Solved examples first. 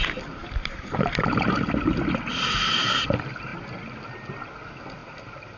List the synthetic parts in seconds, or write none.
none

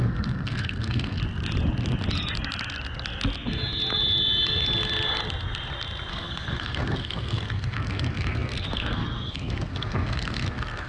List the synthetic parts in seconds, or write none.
0.0-1.2 (codec, SNAC); 6.1-10.9

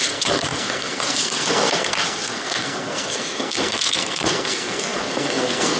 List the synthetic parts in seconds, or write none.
0.0-5.8 (codec, SNAC)

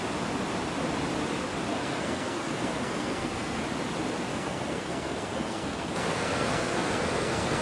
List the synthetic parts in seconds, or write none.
1.7-3.6 (codec, SNAC); 4.3-7.6

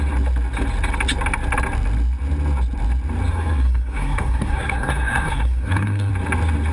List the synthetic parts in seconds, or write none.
3.3-6.1 (codec, SNAC)

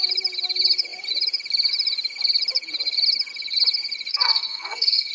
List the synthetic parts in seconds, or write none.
4.1-5.1 (codec, SNAC)

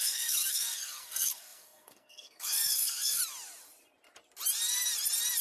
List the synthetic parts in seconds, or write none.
0.0-3.2 (codec, SNAC)